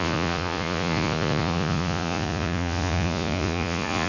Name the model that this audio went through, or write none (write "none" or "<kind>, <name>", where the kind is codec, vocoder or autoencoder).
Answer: vocoder, Vocos